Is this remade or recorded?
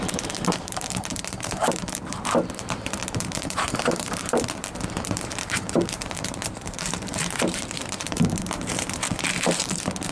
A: remade